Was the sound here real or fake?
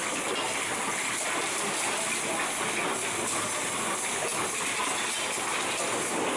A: real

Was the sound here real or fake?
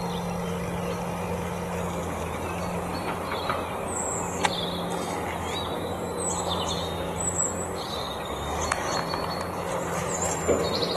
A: real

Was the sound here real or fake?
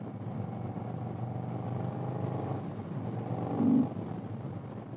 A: real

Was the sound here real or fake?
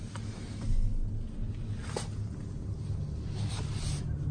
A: real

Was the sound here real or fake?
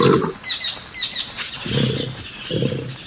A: real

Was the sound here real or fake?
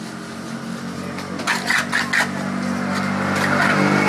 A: real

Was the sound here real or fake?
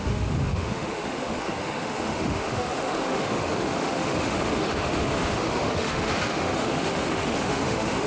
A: fake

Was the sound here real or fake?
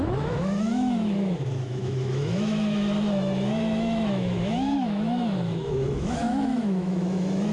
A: fake